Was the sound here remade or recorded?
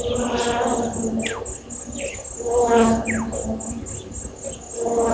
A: recorded